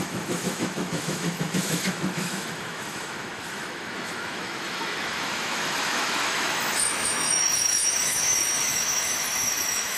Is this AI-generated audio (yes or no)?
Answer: yes